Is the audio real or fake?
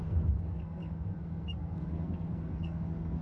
fake